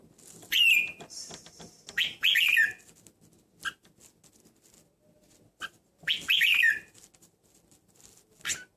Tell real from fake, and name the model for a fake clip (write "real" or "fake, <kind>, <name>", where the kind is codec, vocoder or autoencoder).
real